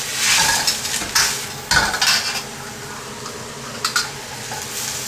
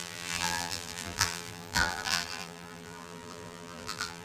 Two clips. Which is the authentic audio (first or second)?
first